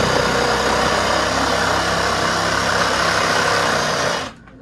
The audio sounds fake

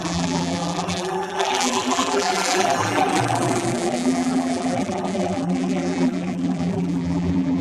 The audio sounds fake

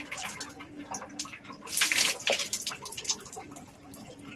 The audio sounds fake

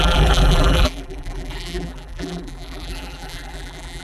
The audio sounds fake